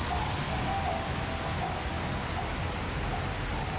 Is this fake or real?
real